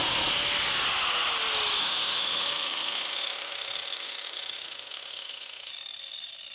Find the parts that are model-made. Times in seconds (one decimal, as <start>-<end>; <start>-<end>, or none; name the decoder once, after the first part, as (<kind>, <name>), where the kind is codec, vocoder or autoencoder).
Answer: 1.8-5.7 (autoencoder, DAC-VAE)

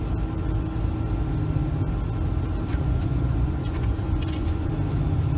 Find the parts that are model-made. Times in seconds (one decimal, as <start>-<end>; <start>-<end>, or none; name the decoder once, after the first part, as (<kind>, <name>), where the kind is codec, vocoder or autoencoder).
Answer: 2.7-4.7 (vocoder, Vocos)

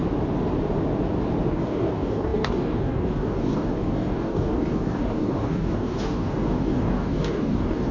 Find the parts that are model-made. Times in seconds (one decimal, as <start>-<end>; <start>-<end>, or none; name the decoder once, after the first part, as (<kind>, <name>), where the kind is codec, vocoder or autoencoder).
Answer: 1.5-7.9 (codec, DAC)

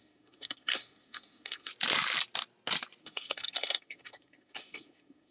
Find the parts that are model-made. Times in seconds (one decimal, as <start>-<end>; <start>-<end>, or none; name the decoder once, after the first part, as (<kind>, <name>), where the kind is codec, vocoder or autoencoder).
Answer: 0.0-1.7 (codec, SNAC); 3.0-5.3

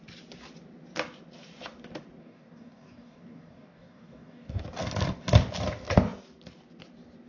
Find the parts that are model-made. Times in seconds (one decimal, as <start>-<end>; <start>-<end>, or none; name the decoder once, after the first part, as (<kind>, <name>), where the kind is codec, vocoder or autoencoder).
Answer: 2.2-4.6 (codec, DAC)

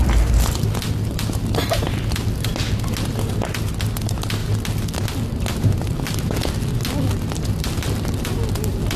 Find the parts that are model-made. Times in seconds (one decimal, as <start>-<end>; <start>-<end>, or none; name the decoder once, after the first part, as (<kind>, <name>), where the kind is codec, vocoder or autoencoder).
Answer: 0.0-2.5 (vocoder, BigVGAN v2); 3.3-4.4; 7.2-9.0